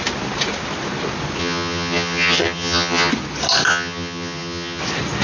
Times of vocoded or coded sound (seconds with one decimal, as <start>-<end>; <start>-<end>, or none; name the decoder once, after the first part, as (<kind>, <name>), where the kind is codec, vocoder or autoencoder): 1.4-3.1 (vocoder, HiFi-GAN); 3.7-4.8